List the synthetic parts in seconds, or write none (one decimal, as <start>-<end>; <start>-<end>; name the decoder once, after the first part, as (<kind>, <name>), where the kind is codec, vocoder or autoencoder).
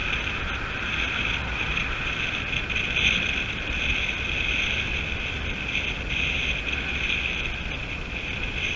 none